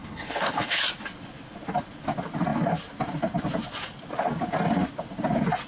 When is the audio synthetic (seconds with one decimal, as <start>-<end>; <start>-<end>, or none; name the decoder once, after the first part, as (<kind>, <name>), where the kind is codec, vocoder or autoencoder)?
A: 0.0-0.8 (codec, HILCodec)